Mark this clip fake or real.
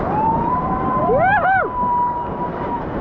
fake